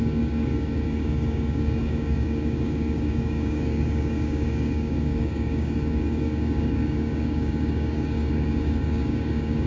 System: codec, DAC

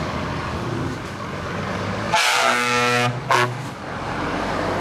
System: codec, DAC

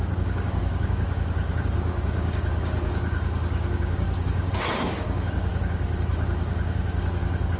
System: codec, DAC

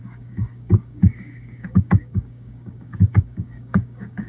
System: codec, DAC